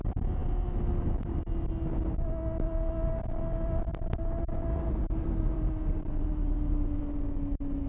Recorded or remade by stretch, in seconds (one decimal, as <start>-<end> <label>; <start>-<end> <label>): 0.0-3.9 recorded; 3.9-7.0 remade; 7.0-7.9 recorded